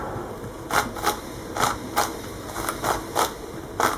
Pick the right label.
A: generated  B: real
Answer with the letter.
B